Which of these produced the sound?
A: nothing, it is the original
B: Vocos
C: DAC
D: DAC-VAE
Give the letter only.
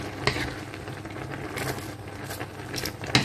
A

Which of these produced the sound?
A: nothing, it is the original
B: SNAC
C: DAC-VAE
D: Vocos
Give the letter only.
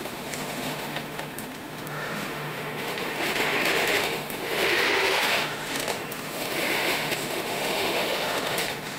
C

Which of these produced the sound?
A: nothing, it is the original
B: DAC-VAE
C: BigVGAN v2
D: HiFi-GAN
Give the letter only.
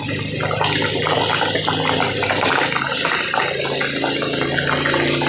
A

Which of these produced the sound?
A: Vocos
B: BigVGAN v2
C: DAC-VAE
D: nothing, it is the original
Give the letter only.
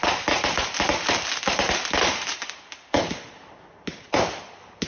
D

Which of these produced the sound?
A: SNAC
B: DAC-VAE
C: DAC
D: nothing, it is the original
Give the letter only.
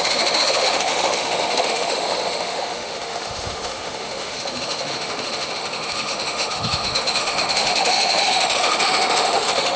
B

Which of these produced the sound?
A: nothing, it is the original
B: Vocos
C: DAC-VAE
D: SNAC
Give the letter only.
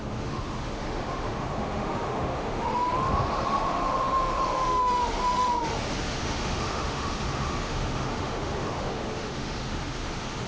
C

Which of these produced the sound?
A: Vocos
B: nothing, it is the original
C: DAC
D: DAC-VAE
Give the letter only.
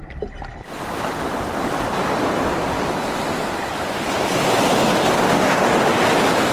B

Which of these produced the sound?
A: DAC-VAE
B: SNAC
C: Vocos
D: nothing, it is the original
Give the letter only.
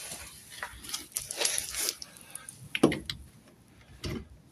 D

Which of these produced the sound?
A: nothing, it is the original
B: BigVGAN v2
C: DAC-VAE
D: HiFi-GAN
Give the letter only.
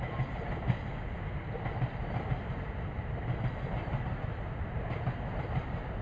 A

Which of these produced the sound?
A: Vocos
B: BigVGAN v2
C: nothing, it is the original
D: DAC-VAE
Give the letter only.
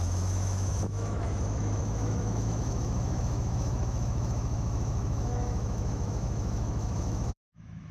D